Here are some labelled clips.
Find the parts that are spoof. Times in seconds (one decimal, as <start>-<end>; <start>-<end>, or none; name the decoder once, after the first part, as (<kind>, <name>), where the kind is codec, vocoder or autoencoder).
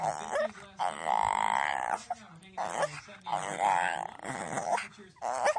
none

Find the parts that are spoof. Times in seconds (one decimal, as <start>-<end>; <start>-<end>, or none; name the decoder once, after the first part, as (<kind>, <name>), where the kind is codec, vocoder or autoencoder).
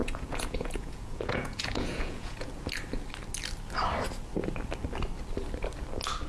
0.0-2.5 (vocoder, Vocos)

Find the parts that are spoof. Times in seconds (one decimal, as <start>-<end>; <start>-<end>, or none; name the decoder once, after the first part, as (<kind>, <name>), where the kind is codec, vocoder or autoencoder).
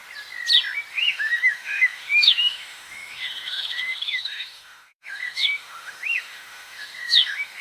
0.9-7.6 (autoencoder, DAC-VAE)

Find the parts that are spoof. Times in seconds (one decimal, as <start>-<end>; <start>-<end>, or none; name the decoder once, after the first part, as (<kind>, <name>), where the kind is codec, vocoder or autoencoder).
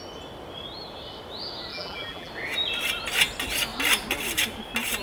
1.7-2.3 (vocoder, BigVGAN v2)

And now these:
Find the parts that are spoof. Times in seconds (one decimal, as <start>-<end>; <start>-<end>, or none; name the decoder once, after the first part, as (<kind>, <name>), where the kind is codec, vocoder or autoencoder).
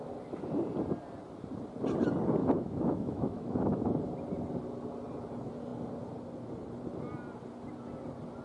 2.4-3.8 (autoencoder, DAC-VAE)